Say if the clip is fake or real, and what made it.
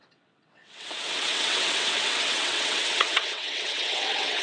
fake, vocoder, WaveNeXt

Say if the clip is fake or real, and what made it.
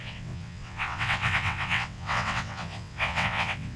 fake, vocoder, WaveNeXt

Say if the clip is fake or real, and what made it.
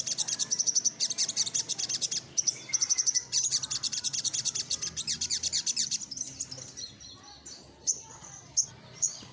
real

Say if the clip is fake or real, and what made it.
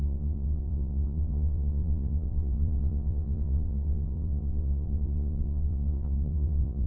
fake, vocoder, WaveNeXt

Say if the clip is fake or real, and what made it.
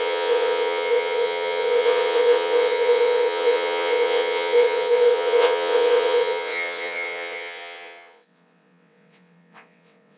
fake, vocoder, WaveNeXt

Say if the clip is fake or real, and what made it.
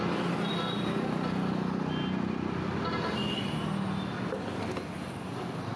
real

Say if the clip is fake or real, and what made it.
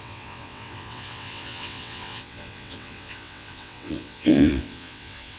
fake, vocoder, WaveNeXt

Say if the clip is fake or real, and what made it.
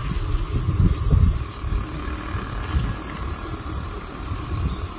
real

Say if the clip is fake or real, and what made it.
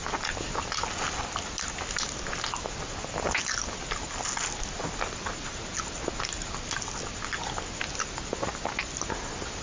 real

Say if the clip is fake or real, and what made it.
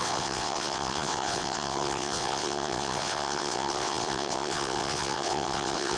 fake, vocoder, WaveNeXt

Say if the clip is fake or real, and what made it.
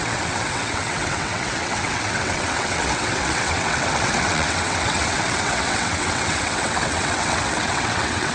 fake, vocoder, WaveNeXt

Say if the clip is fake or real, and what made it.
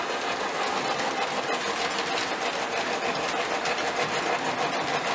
real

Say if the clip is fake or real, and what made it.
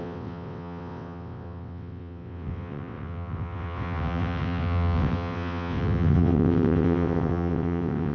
fake, vocoder, WaveNeXt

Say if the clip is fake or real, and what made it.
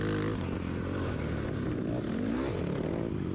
real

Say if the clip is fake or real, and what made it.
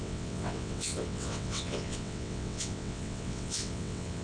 fake, vocoder, WaveNeXt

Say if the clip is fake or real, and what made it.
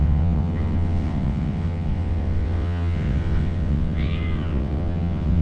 fake, vocoder, WaveNeXt